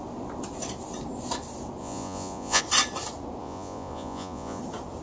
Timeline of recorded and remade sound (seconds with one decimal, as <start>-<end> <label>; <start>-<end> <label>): 0.0-1.8 recorded; 1.8-2.6 remade; 2.6-3.4 recorded; 3.4-4.6 remade; 4.6-5.0 recorded